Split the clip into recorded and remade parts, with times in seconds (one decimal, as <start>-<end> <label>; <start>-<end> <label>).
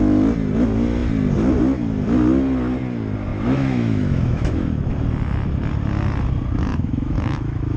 0.0-3.3 recorded; 3.3-4.9 remade; 4.9-6.7 recorded; 6.7-7.8 remade